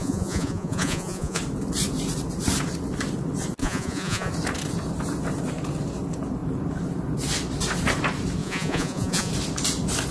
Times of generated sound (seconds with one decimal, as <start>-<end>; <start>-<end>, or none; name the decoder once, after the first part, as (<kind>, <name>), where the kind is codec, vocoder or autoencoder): 0.0-1.4 (vocoder, Vocos); 3.6-4.3; 8.4-9.3